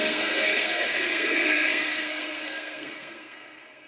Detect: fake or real fake